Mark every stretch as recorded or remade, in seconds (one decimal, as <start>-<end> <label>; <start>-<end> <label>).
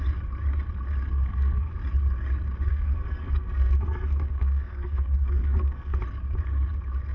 0.0-1.1 recorded; 1.1-1.7 remade; 1.7-2.7 recorded; 2.7-6.0 remade; 6.0-7.1 recorded